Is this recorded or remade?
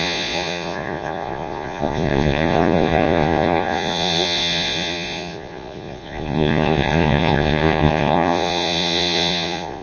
remade